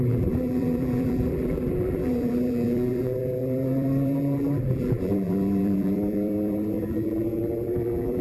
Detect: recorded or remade remade